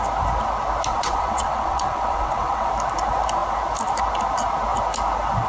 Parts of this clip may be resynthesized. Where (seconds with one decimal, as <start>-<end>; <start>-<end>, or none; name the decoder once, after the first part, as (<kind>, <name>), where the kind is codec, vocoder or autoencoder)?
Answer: 0.9-2.7 (vocoder, WaveNeXt)